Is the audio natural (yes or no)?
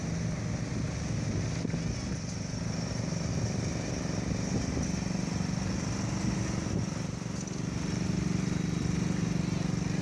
yes